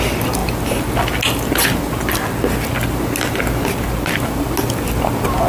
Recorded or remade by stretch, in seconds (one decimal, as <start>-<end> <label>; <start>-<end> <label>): 0.0-5.5 recorded